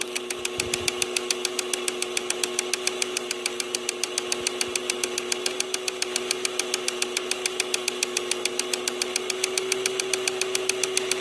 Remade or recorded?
recorded